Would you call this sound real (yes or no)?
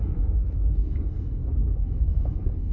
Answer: no